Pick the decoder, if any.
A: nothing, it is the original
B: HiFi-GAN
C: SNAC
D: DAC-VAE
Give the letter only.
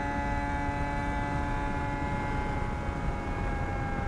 A